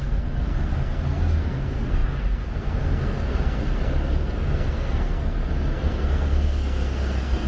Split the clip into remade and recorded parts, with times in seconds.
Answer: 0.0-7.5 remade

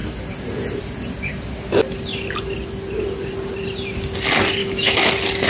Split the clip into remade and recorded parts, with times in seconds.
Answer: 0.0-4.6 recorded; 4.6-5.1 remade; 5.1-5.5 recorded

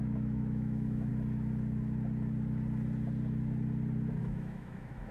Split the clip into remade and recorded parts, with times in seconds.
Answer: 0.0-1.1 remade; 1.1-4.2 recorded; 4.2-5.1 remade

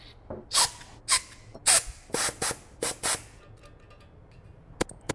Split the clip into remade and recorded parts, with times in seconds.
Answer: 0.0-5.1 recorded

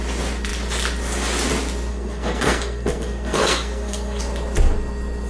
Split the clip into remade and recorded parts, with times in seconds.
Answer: 0.0-1.9 recorded; 1.9-4.2 remade; 4.2-5.3 recorded